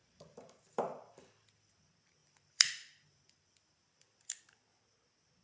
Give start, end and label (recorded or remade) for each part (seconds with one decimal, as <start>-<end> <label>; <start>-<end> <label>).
0.0-1.7 remade; 1.7-2.2 recorded; 2.2-4.4 remade; 4.4-5.4 recorded